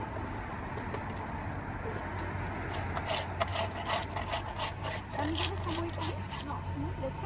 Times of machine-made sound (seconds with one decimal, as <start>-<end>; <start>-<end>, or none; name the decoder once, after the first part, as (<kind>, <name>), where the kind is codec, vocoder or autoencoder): none